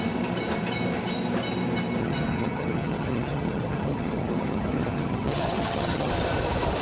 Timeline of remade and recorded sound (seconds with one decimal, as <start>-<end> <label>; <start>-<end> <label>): 0.0-2.0 recorded; 2.0-6.1 remade; 6.1-6.8 recorded